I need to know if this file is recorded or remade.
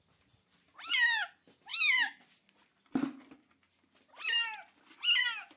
recorded